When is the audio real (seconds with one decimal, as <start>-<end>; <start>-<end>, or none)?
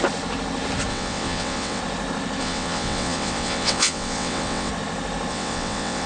0.0-0.9; 1.8-2.4; 4.7-5.3